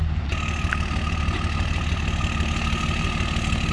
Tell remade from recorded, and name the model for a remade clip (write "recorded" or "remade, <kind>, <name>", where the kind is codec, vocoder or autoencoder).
recorded